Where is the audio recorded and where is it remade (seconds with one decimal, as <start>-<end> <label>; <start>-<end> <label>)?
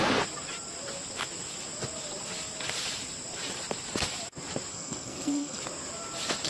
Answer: 0.0-4.7 recorded; 4.7-5.6 remade; 5.6-6.5 recorded